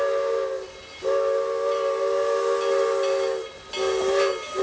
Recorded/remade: recorded